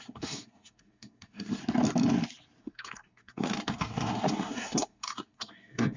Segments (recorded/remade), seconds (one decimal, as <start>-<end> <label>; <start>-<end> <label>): 0.0-1.6 remade; 1.6-2.6 recorded; 2.6-6.0 remade